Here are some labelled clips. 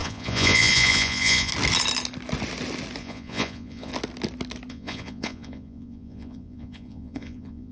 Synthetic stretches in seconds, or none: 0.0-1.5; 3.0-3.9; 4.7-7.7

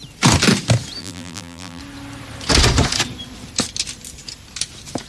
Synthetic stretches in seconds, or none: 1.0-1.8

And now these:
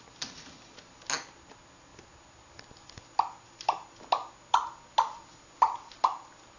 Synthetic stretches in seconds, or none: none